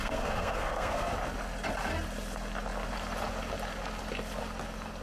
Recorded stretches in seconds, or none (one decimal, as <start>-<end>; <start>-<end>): 1.1-5.0